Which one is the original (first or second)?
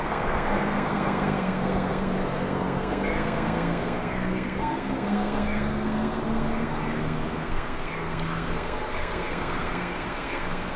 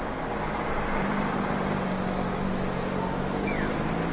second